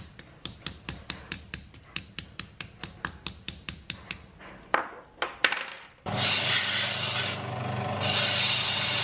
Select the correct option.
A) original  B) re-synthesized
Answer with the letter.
A